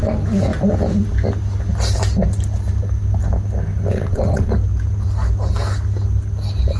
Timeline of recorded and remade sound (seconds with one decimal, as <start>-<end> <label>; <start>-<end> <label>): 0.0-3.9 recorded; 3.9-4.5 remade; 4.5-6.8 recorded